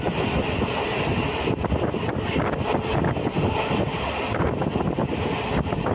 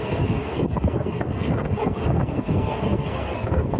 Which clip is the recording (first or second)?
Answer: first